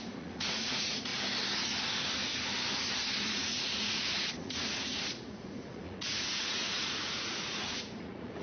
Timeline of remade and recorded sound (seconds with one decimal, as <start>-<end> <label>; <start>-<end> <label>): 0.0-1.1 remade; 1.1-3.2 recorded; 3.2-8.4 remade